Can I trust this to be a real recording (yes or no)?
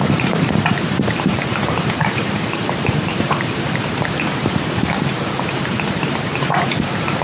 no